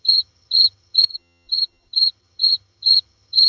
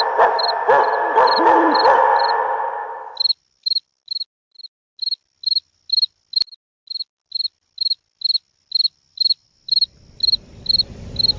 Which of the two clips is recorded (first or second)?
second